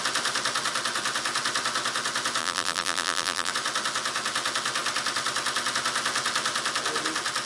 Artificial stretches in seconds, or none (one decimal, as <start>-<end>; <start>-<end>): 2.4-3.5

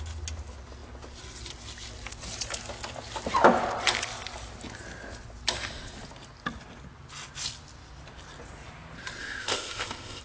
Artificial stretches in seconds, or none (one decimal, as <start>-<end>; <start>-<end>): 9.2-10.2

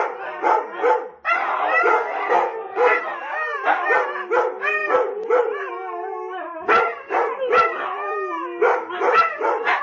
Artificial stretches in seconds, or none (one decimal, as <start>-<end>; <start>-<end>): 1.9-3.0

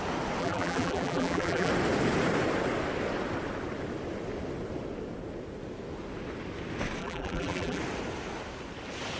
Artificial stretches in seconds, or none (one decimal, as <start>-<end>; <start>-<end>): 0.4-1.7; 7.0-7.8

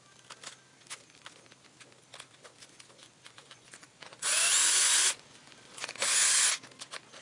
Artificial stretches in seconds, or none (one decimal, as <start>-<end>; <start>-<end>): 3.0-6.4

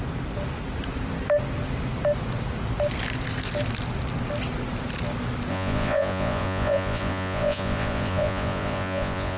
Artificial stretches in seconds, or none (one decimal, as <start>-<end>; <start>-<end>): 5.5-9.4

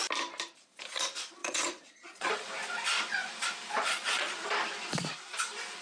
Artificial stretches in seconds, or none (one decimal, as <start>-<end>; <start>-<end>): 1.4-2.3; 3.8-4.3